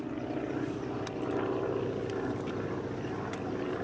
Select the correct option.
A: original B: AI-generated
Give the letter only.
A